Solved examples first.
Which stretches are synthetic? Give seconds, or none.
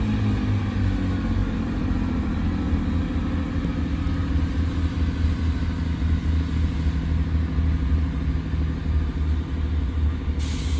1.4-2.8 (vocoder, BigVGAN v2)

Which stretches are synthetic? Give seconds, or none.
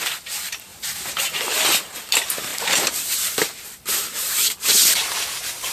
0.7-1.2 (vocoder, BigVGAN v2); 2.5-4.2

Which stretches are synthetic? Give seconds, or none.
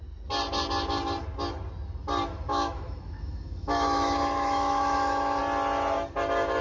2.5-5.4 (autoencoder, DAC-VAE)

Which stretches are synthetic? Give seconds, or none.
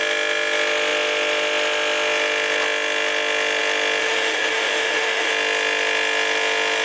4.0-5.3 (autoencoder, DAC-VAE)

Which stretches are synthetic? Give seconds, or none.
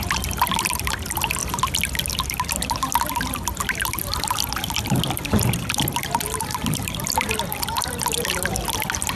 none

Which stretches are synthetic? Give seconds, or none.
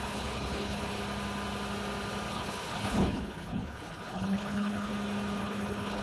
0.0-1.0 (codec, HILCodec); 2.3-4.9; 5.4-6.0